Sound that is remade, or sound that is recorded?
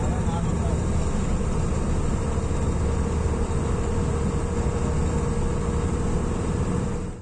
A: recorded